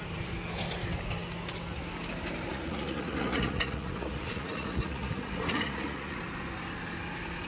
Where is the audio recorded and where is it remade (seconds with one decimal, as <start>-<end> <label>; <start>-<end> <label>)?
0.0-2.5 recorded; 2.5-6.2 remade; 6.2-7.5 recorded